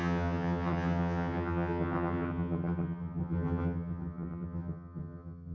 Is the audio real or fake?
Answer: fake